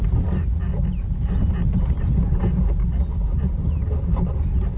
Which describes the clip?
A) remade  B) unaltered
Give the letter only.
B